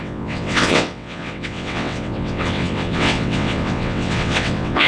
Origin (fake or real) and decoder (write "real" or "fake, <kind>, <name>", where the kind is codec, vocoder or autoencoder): fake, vocoder, WaveNeXt